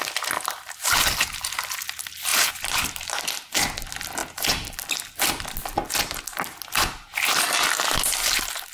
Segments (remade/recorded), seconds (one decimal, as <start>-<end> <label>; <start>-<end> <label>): 0.0-8.7 recorded